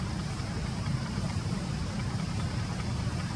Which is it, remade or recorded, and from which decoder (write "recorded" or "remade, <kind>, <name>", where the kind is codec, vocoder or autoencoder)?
remade, vocoder, BigVGAN v2